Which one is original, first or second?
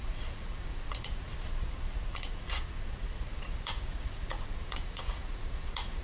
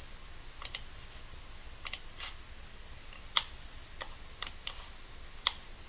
second